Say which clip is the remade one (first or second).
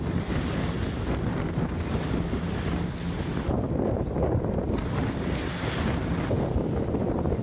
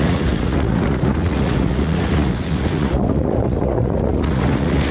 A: second